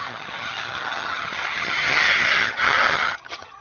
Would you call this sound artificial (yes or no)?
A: yes